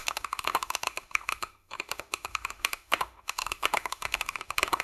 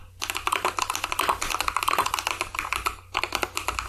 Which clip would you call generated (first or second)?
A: first